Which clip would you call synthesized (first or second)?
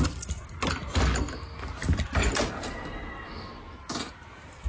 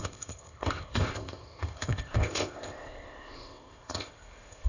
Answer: second